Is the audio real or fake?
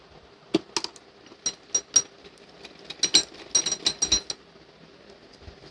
real